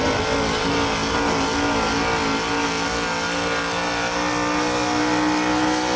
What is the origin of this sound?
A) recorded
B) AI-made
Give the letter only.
A